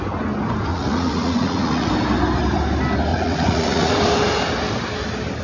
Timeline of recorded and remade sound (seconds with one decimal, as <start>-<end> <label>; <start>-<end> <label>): 0.0-0.7 recorded; 0.7-1.9 remade; 1.9-3.1 recorded; 3.1-3.9 remade; 3.9-5.4 recorded